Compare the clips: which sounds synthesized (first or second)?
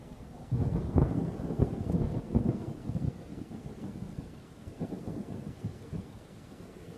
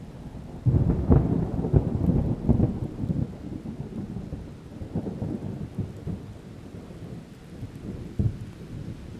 first